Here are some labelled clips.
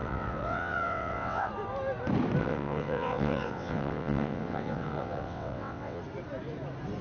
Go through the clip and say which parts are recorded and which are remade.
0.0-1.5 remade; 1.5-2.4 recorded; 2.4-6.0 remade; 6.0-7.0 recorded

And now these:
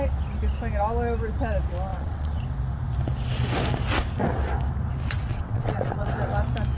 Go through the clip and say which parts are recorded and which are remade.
0.0-1.9 recorded; 1.9-2.4 remade; 2.4-5.3 recorded; 5.3-6.1 remade; 6.1-6.8 recorded

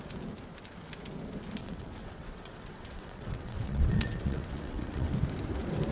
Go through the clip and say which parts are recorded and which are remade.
0.0-1.6 recorded; 1.6-5.1 remade; 5.1-5.9 recorded

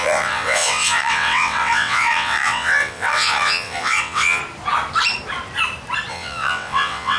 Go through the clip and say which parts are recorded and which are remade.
0.0-4.4 remade; 4.4-6.1 recorded; 6.1-7.2 remade

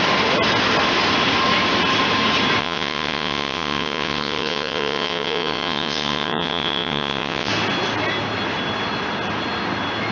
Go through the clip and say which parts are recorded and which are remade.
0.0-2.6 recorded; 2.6-7.5 remade; 7.5-10.1 recorded

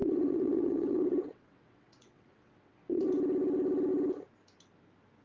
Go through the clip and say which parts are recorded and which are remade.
0.0-3.1 remade; 3.1-5.2 recorded

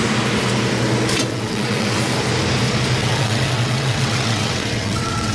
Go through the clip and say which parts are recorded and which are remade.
0.0-1.3 recorded; 1.3-2.0 remade; 2.0-3.0 recorded; 3.0-5.3 remade